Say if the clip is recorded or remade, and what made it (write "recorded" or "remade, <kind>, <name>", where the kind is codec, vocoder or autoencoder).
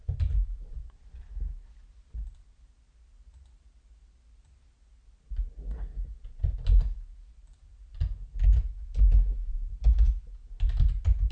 recorded